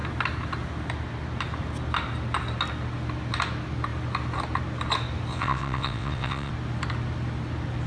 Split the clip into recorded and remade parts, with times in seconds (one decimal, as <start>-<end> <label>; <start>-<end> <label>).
0.0-5.3 recorded; 5.3-6.5 remade; 6.5-7.9 recorded